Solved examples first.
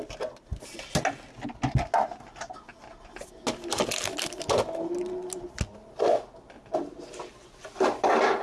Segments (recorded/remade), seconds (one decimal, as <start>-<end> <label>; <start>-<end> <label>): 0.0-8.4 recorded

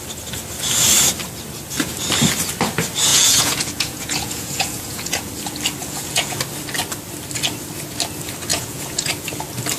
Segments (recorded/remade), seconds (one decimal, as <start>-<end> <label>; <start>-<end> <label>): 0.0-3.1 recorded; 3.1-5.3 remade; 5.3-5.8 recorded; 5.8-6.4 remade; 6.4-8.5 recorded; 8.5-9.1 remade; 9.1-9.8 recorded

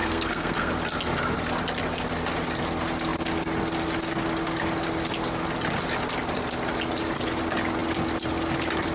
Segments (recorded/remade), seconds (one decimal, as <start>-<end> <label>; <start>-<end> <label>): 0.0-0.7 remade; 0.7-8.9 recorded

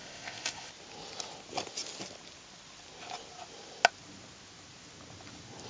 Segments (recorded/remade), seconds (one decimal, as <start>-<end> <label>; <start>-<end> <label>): 0.0-0.7 remade; 0.7-5.7 recorded

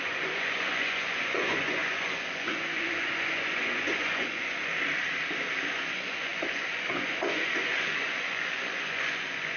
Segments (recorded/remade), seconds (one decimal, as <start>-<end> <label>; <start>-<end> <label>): 0.0-4.7 remade; 4.7-5.7 recorded; 5.7-9.6 remade

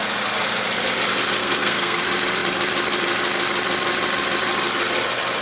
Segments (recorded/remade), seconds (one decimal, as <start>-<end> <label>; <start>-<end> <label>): 0.0-1.4 recorded; 1.4-2.0 remade; 2.0-5.4 recorded

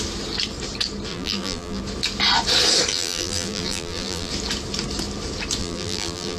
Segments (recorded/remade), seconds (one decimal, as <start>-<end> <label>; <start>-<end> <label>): 0.0-1.1 recorded; 1.1-1.8 remade; 1.8-2.9 recorded; 2.9-4.3 remade; 4.3-5.6 recorded; 5.6-6.4 remade